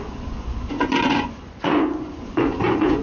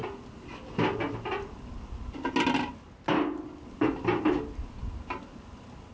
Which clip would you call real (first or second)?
second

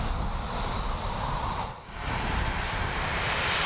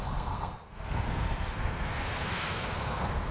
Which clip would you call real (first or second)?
first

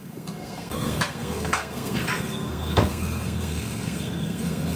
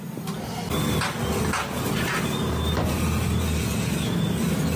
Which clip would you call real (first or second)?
second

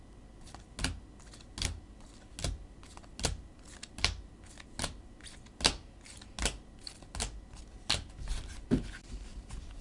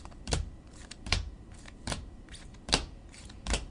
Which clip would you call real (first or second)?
first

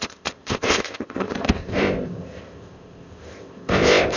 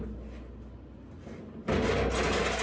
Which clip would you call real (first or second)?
second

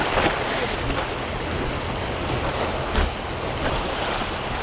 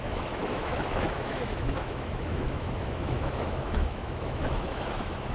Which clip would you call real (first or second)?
first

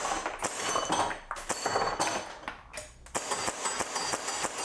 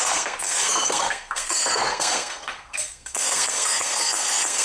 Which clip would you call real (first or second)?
first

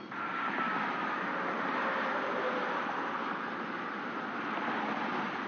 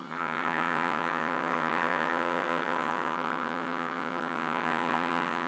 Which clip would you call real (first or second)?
first